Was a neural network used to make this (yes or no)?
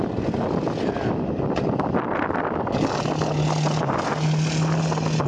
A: no